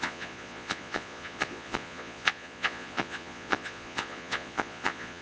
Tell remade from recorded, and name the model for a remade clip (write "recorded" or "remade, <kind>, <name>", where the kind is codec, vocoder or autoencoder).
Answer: remade, vocoder, Vocos